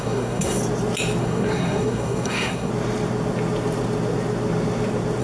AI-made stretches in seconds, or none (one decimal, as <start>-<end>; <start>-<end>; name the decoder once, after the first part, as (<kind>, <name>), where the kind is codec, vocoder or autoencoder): 0.0-0.6 (codec, SNAC); 1.2-2.7